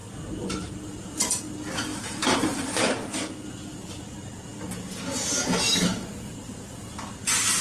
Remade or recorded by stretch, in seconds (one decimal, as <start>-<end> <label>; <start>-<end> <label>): 0.0-1.4 remade; 1.4-1.9 recorded; 1.9-2.7 remade; 2.7-7.6 recorded